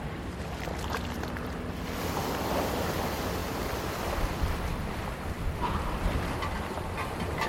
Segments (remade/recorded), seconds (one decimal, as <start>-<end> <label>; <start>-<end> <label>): 0.0-7.5 remade